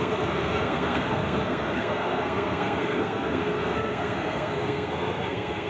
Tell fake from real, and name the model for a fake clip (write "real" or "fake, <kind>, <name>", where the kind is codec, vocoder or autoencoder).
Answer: fake, codec, SNAC